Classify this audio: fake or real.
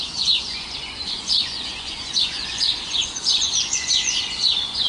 fake